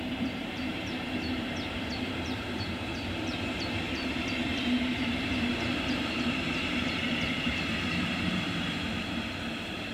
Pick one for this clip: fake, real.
fake